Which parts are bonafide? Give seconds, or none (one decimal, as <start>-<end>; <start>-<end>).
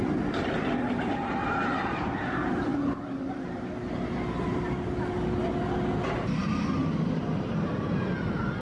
0.0-8.6